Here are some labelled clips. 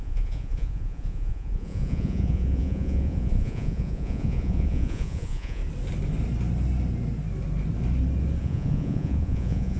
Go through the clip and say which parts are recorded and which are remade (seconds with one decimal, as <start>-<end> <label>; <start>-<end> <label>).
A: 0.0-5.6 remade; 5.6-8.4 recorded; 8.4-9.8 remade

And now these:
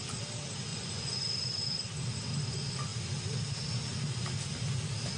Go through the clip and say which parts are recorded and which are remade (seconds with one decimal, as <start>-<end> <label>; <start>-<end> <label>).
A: 0.0-0.7 recorded; 0.7-1.2 remade; 1.2-5.2 recorded

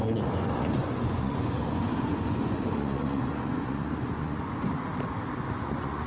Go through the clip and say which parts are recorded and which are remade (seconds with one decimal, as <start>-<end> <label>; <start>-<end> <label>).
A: 0.0-4.9 remade; 4.9-5.5 recorded; 5.5-6.1 remade

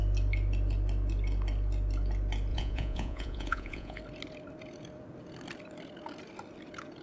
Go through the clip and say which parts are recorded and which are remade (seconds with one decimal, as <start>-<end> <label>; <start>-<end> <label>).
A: 0.0-2.5 recorded; 2.5-4.0 remade; 4.0-7.0 recorded

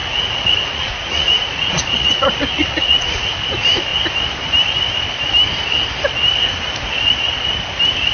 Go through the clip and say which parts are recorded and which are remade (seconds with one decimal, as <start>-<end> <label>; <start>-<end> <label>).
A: 0.0-3.3 remade; 3.3-8.1 recorded

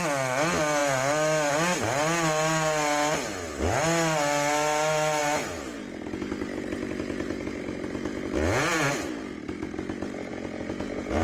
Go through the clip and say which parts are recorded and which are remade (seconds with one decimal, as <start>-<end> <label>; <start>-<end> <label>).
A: 0.0-10.3 recorded; 10.3-11.2 remade